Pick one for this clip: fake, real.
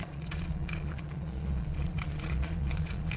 fake